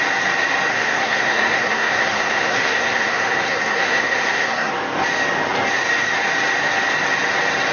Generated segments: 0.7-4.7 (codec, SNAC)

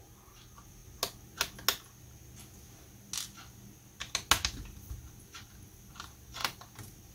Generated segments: 6.4-7.1 (vocoder, BigVGAN v2)

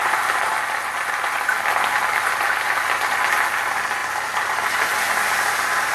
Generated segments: none

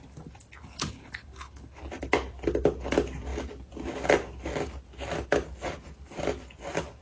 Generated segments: 0.6-1.8 (codec, HILCodec)

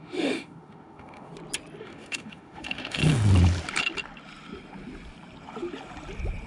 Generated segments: 0.0-1.3 (autoencoder, DAC-VAE); 1.8-3.0